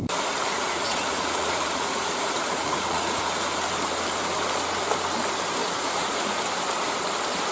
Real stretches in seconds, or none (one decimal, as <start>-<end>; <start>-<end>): 0.0-0.5; 3.4-5.6; 6.4-7.5